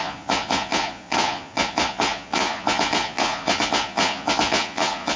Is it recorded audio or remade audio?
remade